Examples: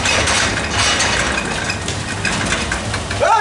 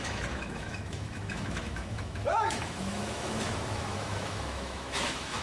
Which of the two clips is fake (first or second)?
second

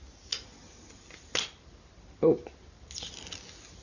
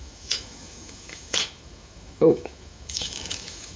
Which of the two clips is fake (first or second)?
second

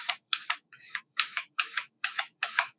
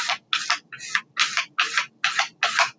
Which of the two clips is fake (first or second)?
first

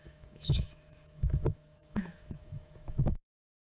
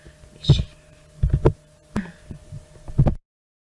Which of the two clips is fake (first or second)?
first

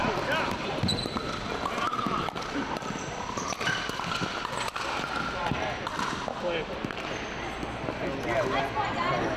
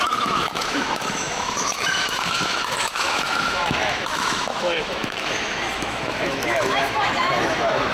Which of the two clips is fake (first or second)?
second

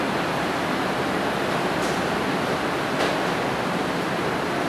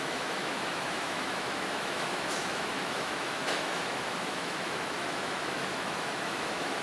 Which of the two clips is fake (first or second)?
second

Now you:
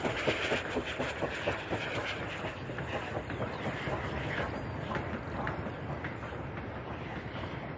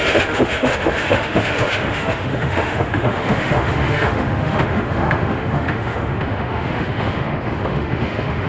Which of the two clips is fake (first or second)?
second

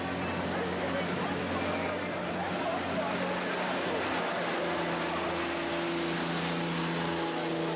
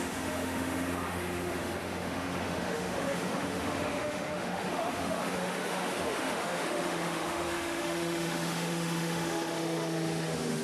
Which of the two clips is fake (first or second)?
second